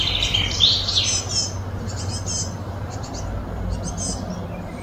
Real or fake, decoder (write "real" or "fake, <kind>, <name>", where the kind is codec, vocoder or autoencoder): fake, vocoder, BigVGAN v2